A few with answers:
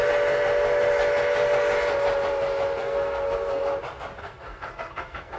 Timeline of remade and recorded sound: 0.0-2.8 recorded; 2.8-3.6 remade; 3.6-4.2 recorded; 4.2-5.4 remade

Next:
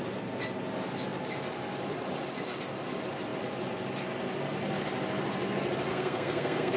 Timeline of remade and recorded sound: 0.0-5.9 recorded; 5.9-6.8 remade

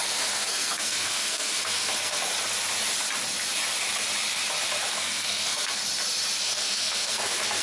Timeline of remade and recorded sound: 0.0-2.3 remade; 2.3-4.9 recorded; 4.9-5.8 remade; 5.8-6.4 recorded; 6.4-7.6 remade

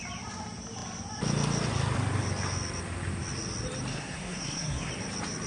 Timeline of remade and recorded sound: 0.0-3.9 recorded; 3.9-4.9 remade; 4.9-5.5 recorded

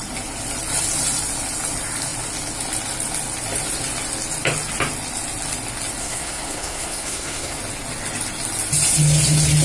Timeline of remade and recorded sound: 0.0-6.0 recorded; 6.0-7.6 remade; 7.6-9.6 recorded

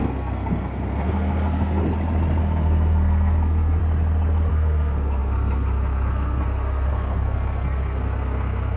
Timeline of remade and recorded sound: 0.0-1.8 remade; 1.8-2.4 recorded; 2.4-3.8 remade; 3.8-4.5 recorded; 4.5-8.8 remade